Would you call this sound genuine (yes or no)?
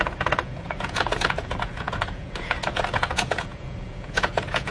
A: no